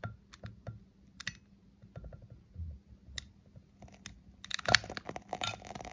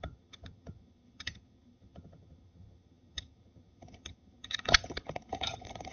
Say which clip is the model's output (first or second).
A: second